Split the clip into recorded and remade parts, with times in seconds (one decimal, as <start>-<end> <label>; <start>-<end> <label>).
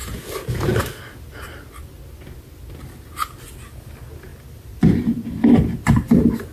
0.0-6.5 recorded